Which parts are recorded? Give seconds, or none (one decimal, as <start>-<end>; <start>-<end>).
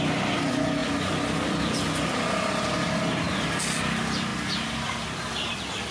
0.0-5.9